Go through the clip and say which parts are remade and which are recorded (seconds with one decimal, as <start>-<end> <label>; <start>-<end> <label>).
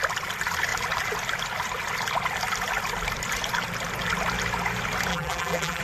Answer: 0.0-5.1 recorded; 5.1-5.8 remade